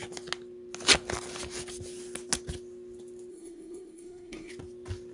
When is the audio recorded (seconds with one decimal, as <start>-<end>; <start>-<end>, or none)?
0.0-3.3; 4.5-5.1